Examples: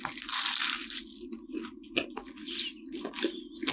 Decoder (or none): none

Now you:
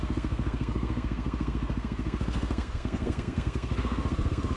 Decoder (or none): codec, SNAC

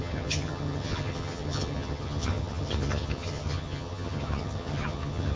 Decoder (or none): vocoder, HiFi-GAN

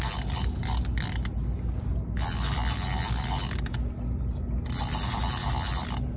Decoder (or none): none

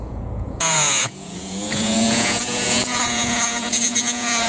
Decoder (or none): vocoder, Vocos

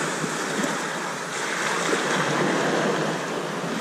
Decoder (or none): none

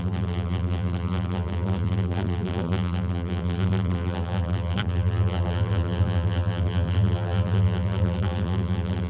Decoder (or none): vocoder, BigVGAN v2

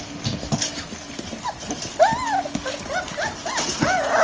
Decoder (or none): none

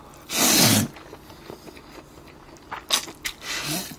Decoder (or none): none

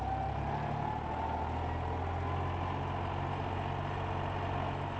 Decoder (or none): none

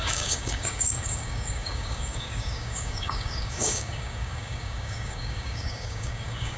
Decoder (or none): codec, DAC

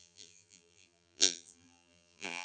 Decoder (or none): vocoder, BigVGAN v2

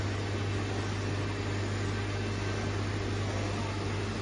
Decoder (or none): none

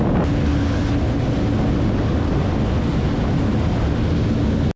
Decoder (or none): none